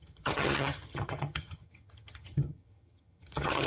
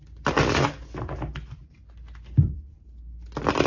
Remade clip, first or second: first